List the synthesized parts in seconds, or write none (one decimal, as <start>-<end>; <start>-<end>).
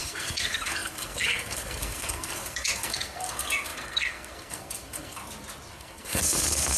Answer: 0.0-5.2; 5.7-6.8